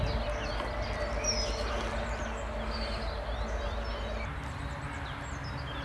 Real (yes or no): yes